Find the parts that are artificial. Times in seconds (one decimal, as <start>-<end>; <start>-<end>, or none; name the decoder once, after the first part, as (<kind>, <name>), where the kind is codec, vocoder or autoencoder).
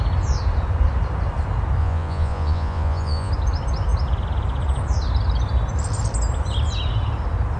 1.8-3.3 (vocoder, Vocos)